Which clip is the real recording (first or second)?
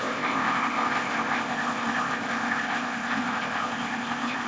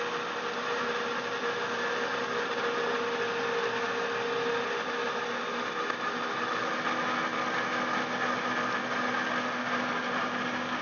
second